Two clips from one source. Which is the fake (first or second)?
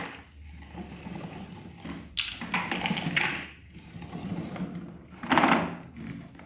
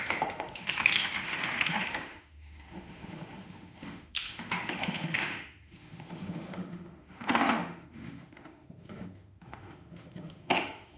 second